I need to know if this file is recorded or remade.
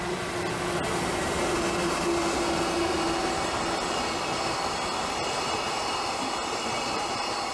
recorded